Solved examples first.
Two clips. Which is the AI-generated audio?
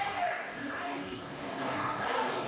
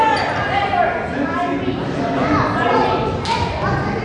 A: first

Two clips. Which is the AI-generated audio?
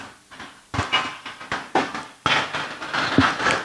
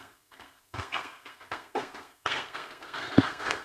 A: second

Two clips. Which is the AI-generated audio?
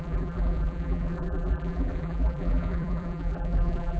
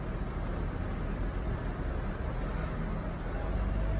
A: first